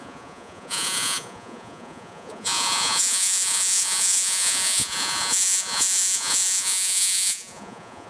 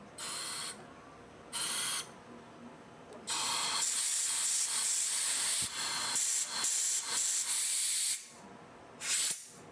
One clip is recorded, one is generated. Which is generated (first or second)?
first